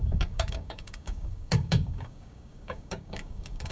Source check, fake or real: fake